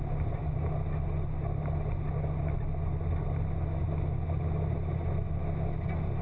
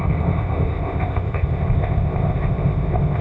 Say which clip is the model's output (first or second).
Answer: second